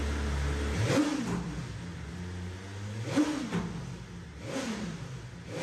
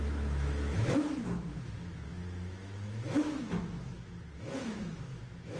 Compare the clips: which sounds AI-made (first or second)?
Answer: second